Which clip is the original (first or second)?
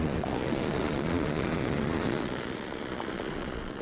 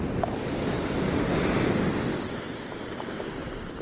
second